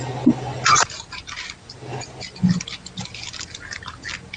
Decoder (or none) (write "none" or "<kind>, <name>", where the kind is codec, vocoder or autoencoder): vocoder, BigVGAN v2